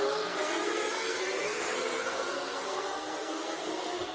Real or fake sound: fake